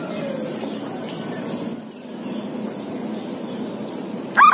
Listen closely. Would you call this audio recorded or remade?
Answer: recorded